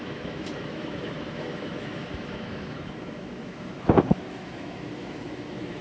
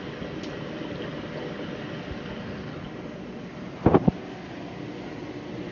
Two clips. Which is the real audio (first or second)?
second